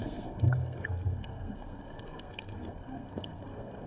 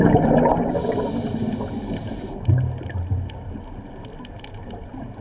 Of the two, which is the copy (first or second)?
first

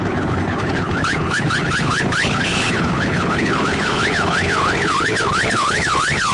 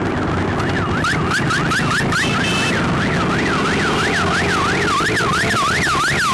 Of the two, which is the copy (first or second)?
first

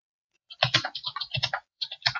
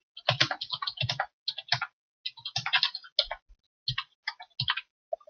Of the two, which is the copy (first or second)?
first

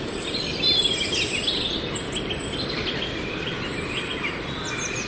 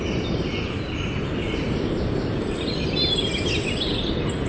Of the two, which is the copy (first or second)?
first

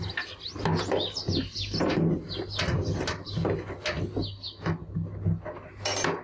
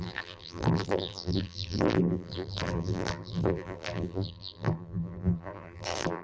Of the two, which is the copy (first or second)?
second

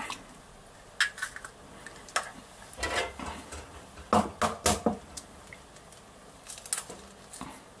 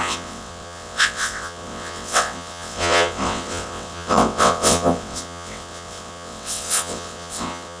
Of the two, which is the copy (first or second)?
second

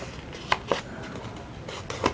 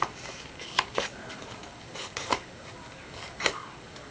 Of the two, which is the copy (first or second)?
second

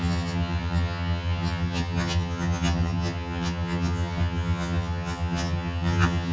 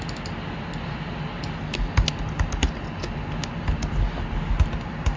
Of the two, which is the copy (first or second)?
first